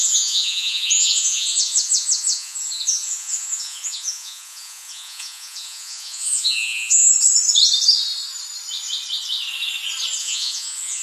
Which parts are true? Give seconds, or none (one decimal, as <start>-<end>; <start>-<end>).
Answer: 7.1-10.2